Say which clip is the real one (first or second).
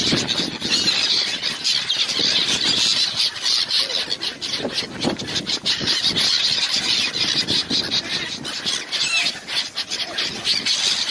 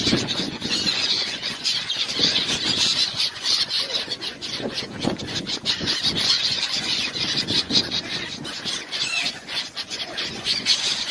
first